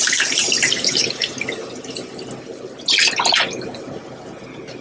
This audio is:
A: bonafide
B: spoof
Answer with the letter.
A